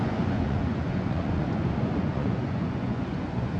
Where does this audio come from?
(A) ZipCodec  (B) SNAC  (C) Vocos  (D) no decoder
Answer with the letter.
C